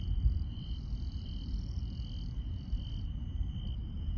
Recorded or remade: recorded